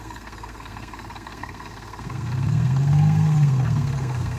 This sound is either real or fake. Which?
fake